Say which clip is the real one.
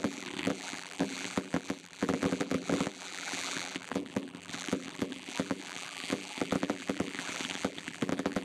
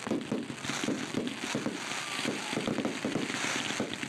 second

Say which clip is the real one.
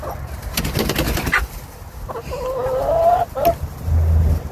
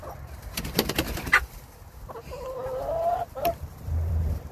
first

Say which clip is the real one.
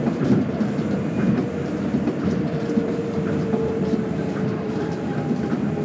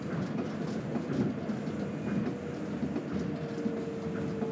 second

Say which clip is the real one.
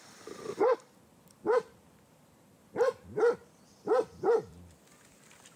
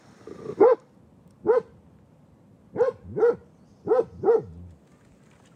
second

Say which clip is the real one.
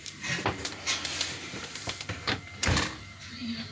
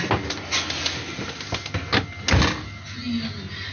second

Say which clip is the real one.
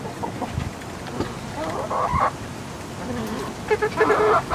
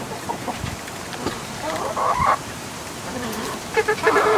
first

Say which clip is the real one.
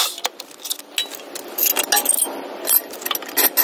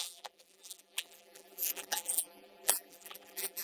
first